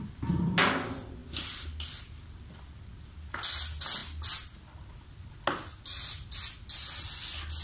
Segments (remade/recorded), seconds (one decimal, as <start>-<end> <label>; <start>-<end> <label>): 0.0-7.6 recorded

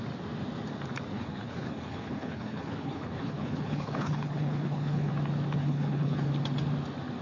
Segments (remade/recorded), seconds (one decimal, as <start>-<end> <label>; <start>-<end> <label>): 0.0-1.1 recorded; 1.1-5.1 remade; 5.1-5.6 recorded; 5.6-6.3 remade; 6.3-7.2 recorded